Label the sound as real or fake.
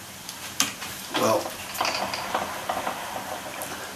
fake